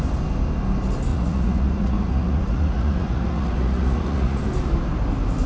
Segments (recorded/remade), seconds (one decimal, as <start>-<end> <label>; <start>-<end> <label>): 0.0-1.1 recorded; 1.1-4.4 remade; 4.4-5.5 recorded